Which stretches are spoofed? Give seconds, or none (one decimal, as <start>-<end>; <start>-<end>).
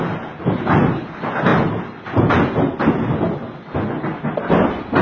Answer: none